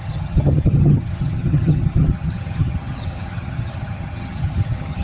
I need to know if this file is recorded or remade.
remade